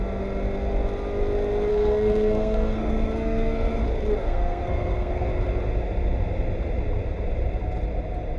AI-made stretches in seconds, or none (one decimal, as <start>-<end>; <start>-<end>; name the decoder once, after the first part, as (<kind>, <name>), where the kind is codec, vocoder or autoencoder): 1.7-3.8 (codec, SNAC); 4.2-5.3